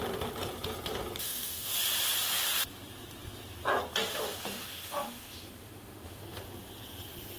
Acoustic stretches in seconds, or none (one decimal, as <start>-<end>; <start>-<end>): 0.0-1.2; 1.7-4.1; 6.4-7.4